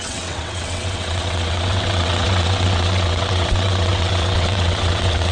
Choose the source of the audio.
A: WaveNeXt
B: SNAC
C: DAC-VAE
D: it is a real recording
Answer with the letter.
A